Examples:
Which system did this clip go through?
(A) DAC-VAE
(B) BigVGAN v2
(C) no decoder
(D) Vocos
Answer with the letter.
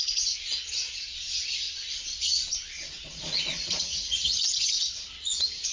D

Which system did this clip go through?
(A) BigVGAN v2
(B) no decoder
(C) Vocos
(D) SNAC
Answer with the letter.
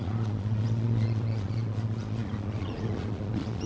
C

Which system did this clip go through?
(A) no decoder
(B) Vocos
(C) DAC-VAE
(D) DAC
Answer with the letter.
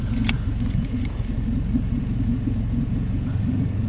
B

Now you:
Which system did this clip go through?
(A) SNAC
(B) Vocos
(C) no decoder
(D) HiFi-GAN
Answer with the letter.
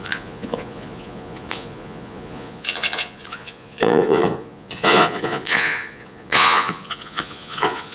B